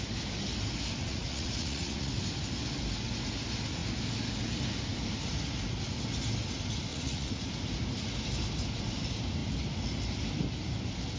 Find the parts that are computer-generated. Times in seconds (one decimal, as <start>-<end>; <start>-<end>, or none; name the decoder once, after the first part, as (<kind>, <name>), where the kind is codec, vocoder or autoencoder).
1.0-2.1 (vocoder, Vocos); 6.9-7.4